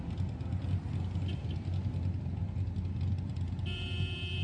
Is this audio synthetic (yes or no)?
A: no